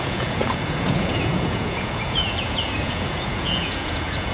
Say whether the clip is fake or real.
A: fake